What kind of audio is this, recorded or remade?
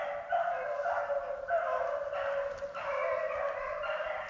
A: recorded